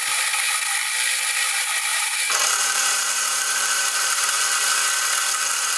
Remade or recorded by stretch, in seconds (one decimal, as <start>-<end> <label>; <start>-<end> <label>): 0.0-1.9 recorded; 1.9-4.4 remade; 4.4-5.8 recorded